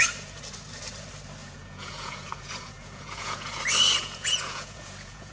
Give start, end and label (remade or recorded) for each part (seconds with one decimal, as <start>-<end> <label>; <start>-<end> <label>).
0.0-1.4 recorded; 1.4-3.6 remade; 3.6-4.0 recorded; 4.0-5.3 remade